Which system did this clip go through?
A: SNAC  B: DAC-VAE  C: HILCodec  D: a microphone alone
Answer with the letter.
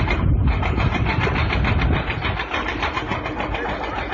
D